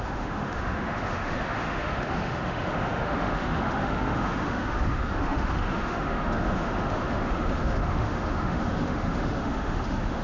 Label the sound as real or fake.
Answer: fake